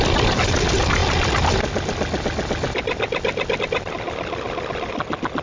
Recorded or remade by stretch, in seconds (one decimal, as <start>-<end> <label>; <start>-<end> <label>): 0.0-5.4 recorded